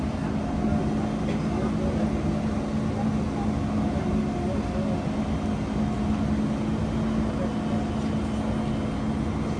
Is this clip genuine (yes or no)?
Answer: yes